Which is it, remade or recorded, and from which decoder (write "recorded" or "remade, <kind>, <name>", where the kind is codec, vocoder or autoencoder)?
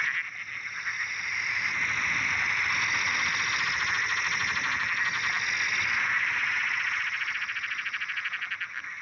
recorded